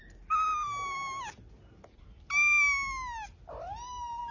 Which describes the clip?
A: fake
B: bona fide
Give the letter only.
B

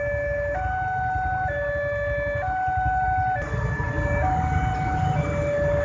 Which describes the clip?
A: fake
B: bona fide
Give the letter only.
B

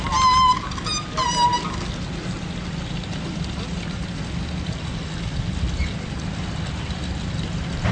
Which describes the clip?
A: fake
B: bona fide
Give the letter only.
B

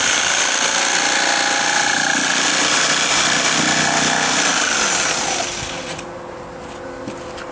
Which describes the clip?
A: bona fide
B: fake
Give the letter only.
A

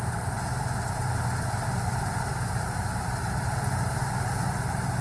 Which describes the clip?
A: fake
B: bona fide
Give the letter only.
A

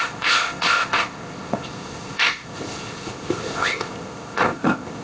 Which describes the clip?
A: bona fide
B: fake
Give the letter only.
B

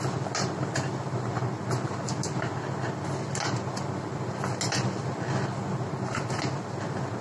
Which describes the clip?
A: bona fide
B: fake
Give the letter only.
A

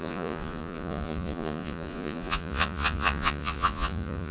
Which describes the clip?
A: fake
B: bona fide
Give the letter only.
A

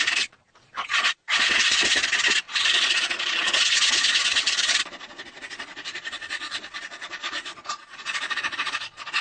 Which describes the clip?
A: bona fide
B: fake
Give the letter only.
B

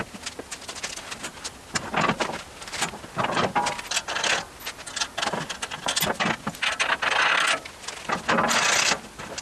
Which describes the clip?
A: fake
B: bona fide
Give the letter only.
B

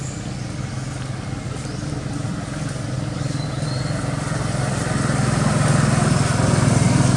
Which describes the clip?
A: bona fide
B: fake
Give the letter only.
A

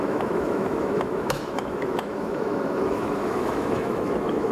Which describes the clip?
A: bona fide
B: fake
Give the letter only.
B